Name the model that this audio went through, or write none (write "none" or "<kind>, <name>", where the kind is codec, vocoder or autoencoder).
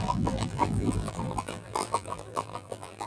vocoder, BigVGAN v2